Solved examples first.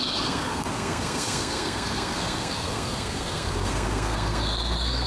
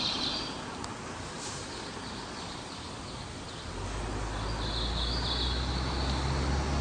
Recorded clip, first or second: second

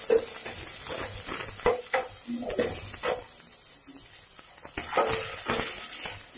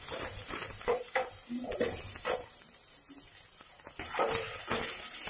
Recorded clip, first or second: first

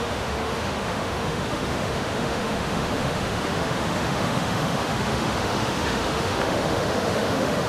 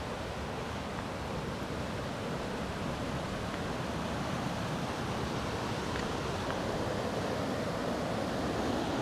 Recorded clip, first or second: second